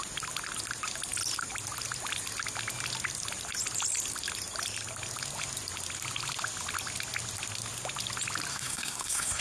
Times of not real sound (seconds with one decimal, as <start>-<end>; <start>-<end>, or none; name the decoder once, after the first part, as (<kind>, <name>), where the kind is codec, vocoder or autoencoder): 8.5-9.4 (codec, SNAC)